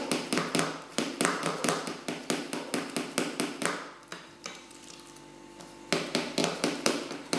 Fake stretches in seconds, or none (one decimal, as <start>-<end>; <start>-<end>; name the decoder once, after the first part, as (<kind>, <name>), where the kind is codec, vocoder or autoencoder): 0.9-1.9 (vocoder, BigVGAN v2); 4.1-4.7; 6.4-7.4